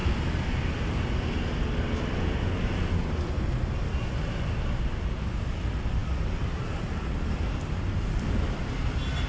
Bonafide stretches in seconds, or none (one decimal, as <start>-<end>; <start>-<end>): 0.0-9.3